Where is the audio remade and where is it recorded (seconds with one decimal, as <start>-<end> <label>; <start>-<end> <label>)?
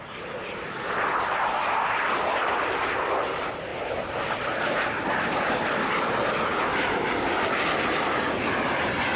0.0-9.2 recorded